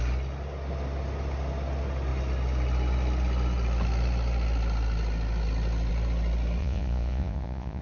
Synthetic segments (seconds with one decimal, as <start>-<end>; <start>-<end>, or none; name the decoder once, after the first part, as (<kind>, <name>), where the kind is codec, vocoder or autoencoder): 6.6-7.8 (vocoder, Vocos)